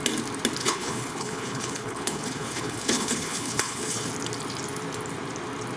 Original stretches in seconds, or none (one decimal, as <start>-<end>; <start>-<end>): 0.0-0.6; 4.1-5.8

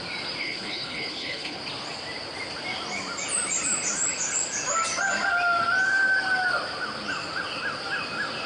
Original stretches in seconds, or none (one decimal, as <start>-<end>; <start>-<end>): 0.0-0.4; 1.6-8.5

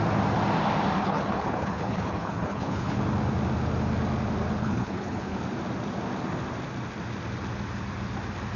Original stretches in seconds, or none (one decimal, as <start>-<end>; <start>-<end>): 0.0-1.0; 3.0-4.6; 5.4-8.6

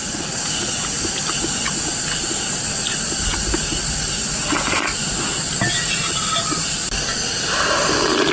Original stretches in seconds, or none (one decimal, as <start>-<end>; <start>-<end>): 0.0-8.3